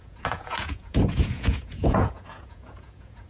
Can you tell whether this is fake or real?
fake